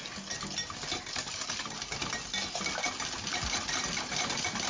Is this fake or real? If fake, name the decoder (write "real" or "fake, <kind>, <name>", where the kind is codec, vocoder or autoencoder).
real